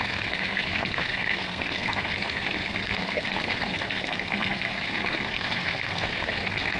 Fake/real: fake